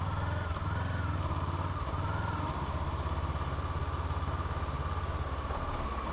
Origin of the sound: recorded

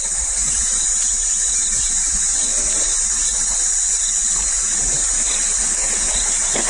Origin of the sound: recorded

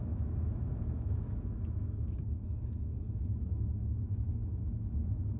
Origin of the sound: remade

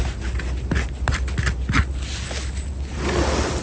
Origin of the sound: recorded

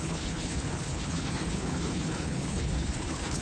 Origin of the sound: remade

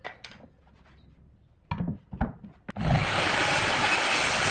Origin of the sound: recorded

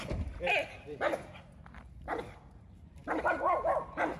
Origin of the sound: remade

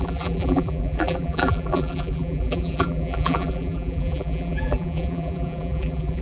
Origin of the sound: remade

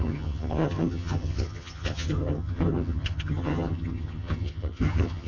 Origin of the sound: remade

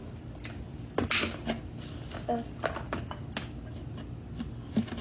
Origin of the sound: recorded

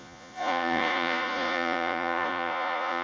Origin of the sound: remade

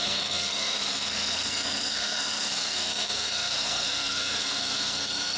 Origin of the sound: remade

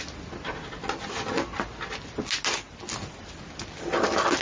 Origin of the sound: recorded